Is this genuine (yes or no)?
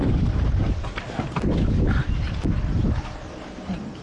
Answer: yes